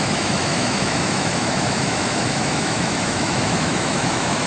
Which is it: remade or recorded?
remade